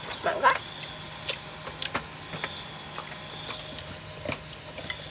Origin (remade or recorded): recorded